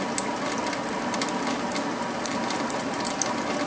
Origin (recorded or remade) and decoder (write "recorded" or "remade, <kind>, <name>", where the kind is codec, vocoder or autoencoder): recorded